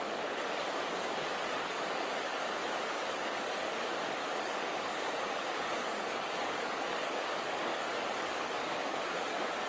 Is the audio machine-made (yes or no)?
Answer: yes